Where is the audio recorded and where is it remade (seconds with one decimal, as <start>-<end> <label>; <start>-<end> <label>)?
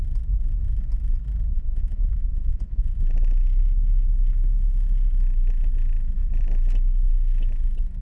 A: 0.0-1.5 recorded; 1.5-3.0 remade; 3.0-8.0 recorded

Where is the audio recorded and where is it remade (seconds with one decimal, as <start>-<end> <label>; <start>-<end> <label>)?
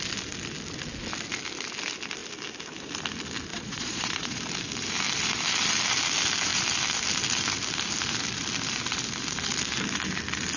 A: 0.0-3.5 recorded; 3.5-4.4 remade; 4.4-10.6 recorded